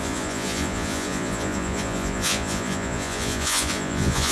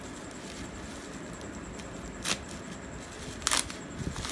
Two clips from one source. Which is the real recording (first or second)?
second